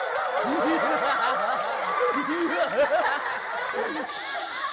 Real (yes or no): yes